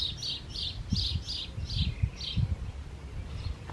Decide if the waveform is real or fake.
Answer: real